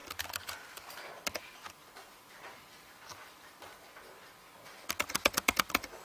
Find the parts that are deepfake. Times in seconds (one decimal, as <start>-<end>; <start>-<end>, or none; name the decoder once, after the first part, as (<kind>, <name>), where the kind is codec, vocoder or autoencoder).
none